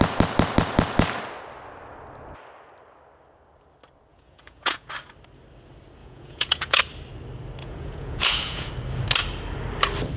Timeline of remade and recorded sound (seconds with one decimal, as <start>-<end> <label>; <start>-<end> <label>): 0.0-4.1 recorded; 4.1-4.9 remade; 4.9-6.0 recorded; 6.0-6.8 remade; 6.8-7.6 recorded; 7.6-8.7 remade; 8.7-10.2 recorded